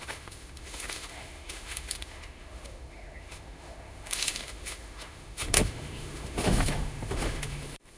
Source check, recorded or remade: remade